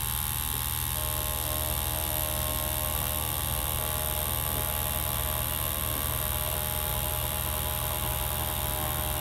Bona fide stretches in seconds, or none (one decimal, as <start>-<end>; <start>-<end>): 0.0-9.2